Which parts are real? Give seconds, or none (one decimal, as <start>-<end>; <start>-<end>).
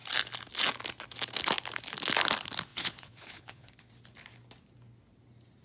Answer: 0.0-2.7; 3.9-5.6